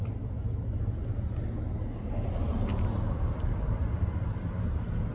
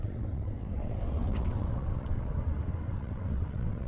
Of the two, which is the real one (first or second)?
first